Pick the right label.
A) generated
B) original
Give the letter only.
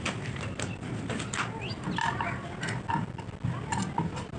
B